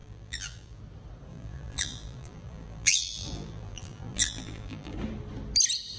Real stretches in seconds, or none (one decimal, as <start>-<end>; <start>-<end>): 0.8-1.3; 4.9-6.0